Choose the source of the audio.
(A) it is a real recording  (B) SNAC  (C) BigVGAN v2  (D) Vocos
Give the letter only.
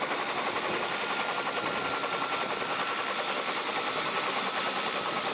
A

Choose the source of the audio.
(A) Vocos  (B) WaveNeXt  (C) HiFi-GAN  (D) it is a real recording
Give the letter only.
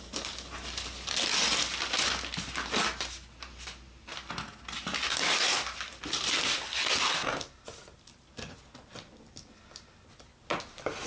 D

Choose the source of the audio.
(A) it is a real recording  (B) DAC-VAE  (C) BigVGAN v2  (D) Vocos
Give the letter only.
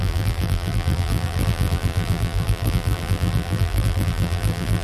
C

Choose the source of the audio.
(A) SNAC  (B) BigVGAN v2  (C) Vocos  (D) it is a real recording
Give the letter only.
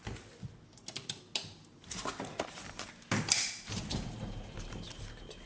D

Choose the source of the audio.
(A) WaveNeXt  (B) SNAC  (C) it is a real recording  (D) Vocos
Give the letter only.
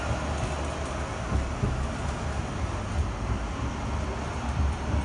C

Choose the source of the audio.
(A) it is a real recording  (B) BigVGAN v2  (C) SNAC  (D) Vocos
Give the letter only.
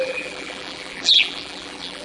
B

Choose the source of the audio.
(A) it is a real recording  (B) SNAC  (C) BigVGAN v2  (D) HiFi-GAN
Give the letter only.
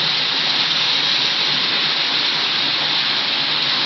A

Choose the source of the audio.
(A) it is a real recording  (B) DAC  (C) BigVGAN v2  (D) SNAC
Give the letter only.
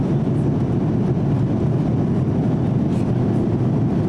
A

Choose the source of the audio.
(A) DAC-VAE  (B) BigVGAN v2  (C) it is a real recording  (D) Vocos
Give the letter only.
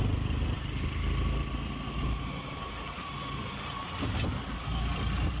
C